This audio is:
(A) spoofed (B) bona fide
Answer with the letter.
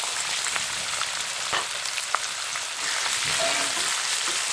B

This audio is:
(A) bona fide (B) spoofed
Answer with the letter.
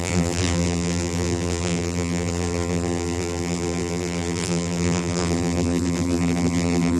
B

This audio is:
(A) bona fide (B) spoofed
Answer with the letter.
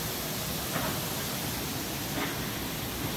A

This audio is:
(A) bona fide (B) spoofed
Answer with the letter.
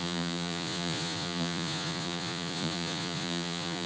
B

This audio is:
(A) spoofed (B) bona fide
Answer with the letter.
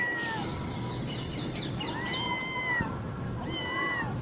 B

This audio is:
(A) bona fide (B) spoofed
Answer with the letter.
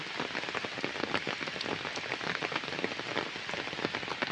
A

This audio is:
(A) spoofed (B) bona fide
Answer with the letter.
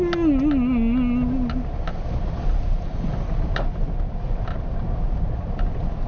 B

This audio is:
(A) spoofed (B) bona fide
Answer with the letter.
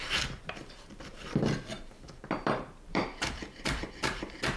A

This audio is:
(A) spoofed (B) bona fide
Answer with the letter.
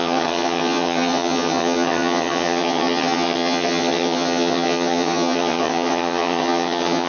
A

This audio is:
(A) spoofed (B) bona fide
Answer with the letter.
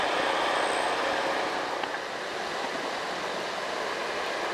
B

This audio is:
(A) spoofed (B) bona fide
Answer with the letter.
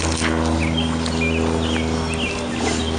B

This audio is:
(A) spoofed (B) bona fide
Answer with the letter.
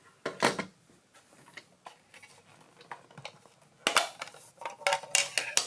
B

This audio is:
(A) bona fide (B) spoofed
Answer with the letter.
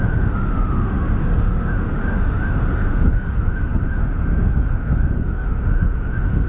B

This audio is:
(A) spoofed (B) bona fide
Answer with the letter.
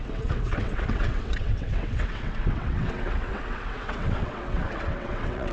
A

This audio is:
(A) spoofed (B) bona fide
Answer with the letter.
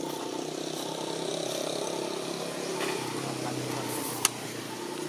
B